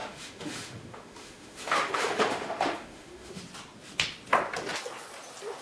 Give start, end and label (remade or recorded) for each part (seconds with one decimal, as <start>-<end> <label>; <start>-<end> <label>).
0.0-3.4 remade; 3.4-5.6 recorded